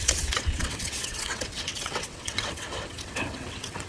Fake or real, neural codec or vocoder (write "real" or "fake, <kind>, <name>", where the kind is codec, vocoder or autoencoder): fake, vocoder, WaveNeXt